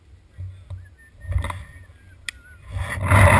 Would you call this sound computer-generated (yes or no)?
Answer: no